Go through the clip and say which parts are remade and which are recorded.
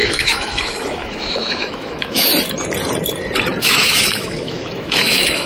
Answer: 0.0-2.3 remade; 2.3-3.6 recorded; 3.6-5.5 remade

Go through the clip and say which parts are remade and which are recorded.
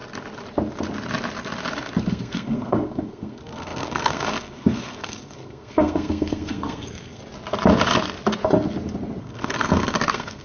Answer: 0.0-2.1 recorded; 2.1-7.2 remade; 7.2-9.2 recorded; 9.2-10.4 remade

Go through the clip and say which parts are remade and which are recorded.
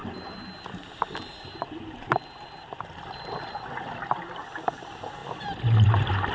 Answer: 0.0-6.3 recorded